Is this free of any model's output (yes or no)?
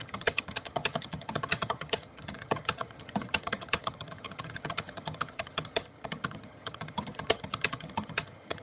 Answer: no